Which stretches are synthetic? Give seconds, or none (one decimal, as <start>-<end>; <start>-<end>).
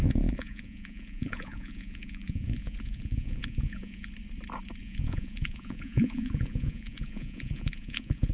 0.0-4.1; 4.8-8.3